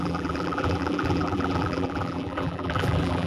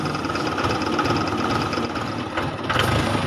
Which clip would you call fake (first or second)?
first